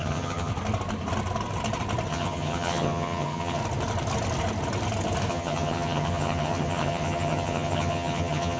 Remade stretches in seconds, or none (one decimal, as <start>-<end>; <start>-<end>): 0.0-0.5; 2.1-3.6; 5.3-8.6

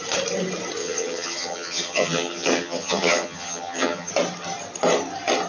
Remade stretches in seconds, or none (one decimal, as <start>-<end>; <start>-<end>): 0.8-4.1

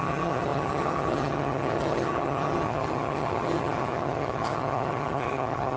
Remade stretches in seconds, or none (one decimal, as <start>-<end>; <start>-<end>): 0.0-5.8

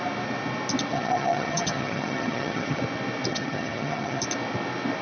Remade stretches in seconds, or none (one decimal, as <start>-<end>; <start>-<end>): 0.9-2.8; 3.3-4.2

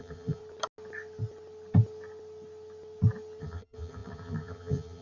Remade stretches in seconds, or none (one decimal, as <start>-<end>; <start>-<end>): 0.0-0.4; 3.4-5.0

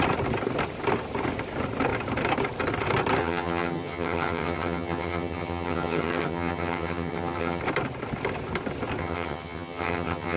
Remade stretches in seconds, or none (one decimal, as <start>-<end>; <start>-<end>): 3.2-7.6; 9.0-10.4